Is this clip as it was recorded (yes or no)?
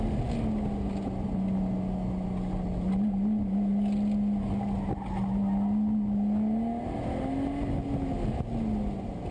yes